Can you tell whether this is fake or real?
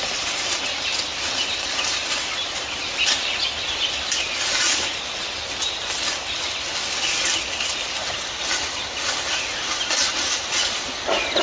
real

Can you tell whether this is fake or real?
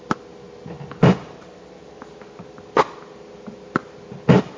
real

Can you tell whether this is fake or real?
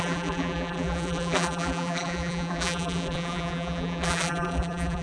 fake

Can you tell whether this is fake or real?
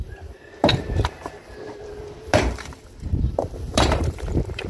fake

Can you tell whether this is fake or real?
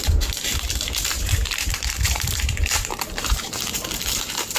fake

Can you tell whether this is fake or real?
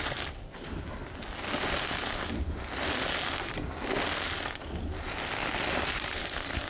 real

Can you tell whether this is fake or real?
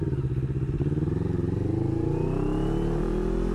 real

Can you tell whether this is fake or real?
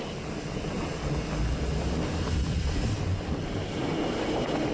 real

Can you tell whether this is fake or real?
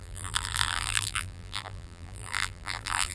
fake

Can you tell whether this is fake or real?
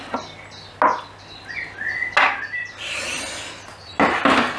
real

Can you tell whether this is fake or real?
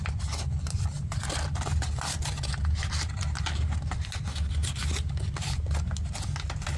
real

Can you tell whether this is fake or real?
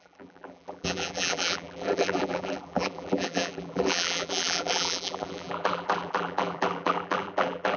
fake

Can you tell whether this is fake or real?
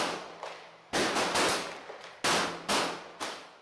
real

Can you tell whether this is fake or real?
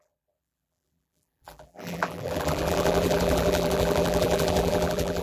fake